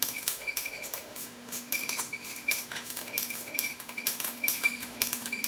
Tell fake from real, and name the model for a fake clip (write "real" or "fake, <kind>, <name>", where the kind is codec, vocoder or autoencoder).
fake, autoencoder, DAC-VAE